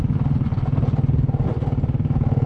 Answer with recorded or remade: recorded